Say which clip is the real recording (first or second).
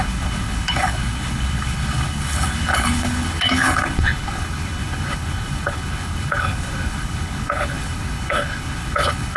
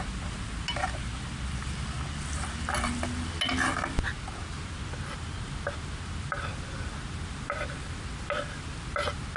second